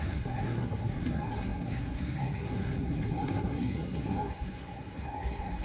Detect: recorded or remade remade